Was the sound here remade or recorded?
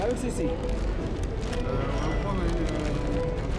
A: recorded